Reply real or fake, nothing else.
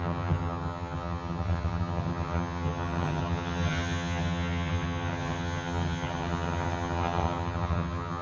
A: fake